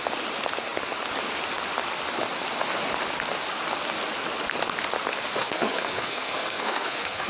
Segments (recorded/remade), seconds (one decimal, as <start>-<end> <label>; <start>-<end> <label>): 0.0-5.4 recorded; 5.4-7.3 remade